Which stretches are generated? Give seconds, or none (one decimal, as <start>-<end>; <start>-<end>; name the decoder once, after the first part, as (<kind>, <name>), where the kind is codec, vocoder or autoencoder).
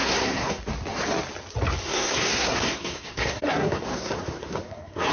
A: 0.0-0.6 (codec, SNAC); 1.8-5.1